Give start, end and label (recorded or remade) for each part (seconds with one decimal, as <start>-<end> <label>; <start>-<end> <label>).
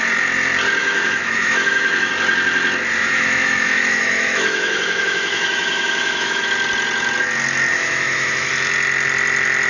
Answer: 0.0-0.8 recorded; 0.8-2.1 remade; 2.1-3.0 recorded; 3.0-6.5 remade; 6.5-7.7 recorded; 7.7-8.5 remade; 8.5-9.7 recorded